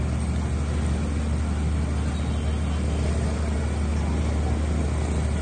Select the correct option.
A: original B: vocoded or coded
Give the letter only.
A